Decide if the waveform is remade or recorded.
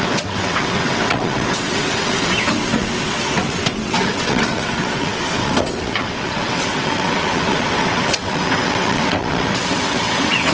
remade